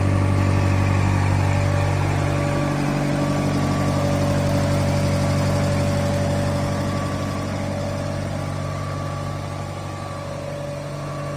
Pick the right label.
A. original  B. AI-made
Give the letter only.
A